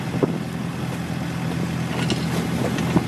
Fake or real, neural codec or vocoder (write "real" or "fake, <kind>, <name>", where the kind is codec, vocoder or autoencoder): real